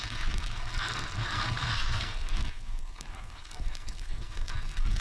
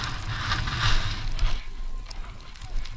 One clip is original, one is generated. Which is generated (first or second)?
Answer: first